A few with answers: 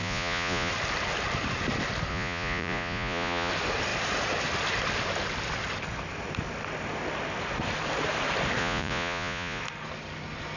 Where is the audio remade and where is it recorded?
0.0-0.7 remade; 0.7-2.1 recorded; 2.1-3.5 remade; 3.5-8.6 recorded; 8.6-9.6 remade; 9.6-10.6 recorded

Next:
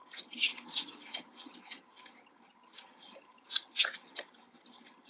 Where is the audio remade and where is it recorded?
0.0-5.1 remade

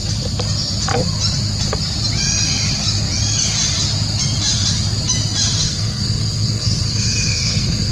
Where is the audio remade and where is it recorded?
0.0-5.6 recorded; 5.6-7.9 remade

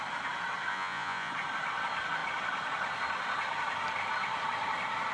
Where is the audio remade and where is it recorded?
0.0-0.7 recorded; 0.7-1.3 remade; 1.3-5.1 recorded